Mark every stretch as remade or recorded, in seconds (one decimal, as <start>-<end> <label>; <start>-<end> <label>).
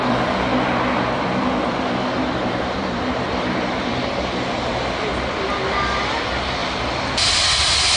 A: 0.0-5.1 remade; 5.1-6.0 recorded; 6.0-8.0 remade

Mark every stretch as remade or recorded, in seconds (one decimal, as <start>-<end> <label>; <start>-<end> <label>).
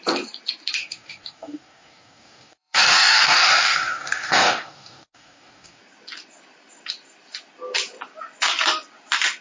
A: 0.0-0.8 recorded; 0.8-5.8 remade; 5.8-9.4 recorded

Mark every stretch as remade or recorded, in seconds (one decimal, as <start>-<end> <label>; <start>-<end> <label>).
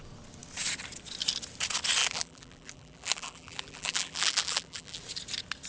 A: 0.0-2.0 recorded; 2.0-5.0 remade; 5.0-5.7 recorded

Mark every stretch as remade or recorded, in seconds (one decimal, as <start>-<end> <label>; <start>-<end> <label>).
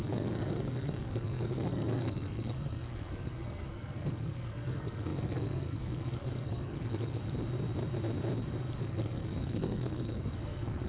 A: 0.0-7.2 remade; 7.2-8.8 recorded; 8.8-10.9 remade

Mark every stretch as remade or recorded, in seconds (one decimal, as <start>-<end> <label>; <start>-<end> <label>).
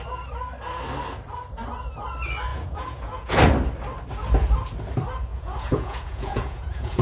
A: 0.0-2.5 recorded; 2.5-3.3 remade; 3.3-5.3 recorded; 5.3-7.0 remade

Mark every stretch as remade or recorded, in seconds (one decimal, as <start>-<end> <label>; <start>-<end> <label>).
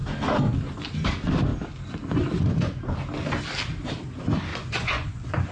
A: 0.0-4.5 recorded; 4.5-5.5 remade